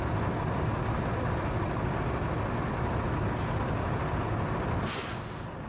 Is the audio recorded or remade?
recorded